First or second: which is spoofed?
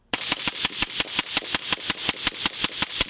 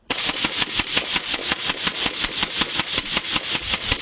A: second